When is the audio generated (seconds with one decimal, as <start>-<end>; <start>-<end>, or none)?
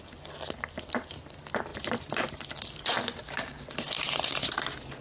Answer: none